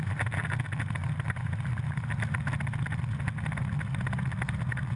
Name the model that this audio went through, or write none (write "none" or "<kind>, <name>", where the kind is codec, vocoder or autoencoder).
none